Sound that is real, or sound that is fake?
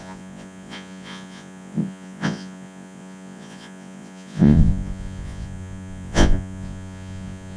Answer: fake